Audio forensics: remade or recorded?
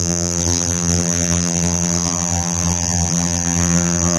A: remade